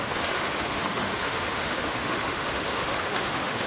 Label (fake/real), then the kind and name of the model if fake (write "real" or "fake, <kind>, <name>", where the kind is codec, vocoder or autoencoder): fake, autoencoder, DAC-VAE